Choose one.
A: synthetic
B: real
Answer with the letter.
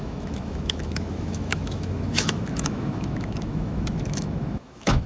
A